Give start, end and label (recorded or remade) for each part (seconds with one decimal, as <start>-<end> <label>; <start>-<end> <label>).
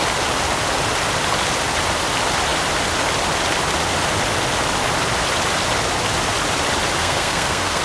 0.0-7.0 recorded; 7.0-7.8 remade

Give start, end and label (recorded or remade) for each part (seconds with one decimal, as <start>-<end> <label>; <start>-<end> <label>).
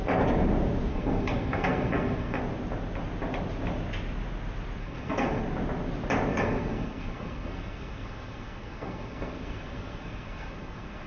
0.0-0.9 recorded; 0.9-2.4 remade; 2.4-4.8 recorded; 4.8-5.4 remade; 5.4-6.3 recorded; 6.3-11.1 remade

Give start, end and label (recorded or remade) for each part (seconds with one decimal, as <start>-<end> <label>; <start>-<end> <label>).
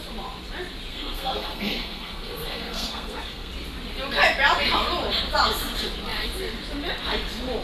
0.0-0.9 recorded; 0.9-3.5 remade; 3.5-7.6 recorded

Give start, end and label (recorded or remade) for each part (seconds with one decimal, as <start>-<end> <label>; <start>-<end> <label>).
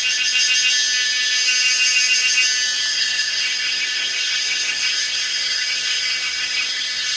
0.0-2.9 recorded; 2.9-7.2 remade